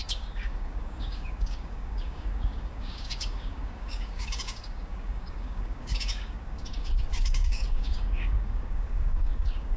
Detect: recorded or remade remade